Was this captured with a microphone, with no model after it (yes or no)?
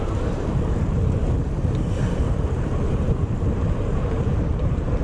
no